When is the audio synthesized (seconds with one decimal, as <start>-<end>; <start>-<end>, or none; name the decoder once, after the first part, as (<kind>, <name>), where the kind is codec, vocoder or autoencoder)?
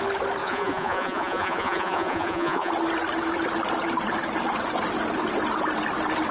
0.4-2.7 (vocoder, Vocos)